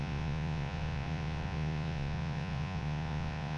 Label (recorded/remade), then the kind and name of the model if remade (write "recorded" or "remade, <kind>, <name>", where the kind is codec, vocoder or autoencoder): remade, vocoder, Vocos